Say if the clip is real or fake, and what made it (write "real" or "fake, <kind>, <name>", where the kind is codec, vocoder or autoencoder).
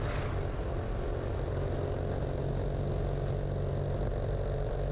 real